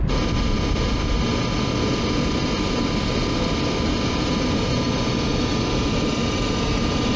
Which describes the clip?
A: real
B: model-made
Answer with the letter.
A